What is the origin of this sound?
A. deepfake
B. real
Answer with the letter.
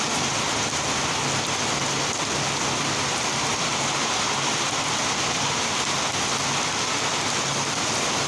B